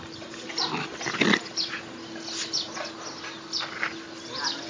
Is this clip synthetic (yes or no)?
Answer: no